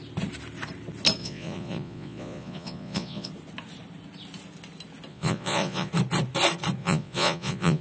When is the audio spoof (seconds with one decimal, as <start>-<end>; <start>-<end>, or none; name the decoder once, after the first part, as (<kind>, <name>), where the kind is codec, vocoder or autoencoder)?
1.2-3.3 (vocoder, Vocos); 5.1-5.9; 6.8-7.8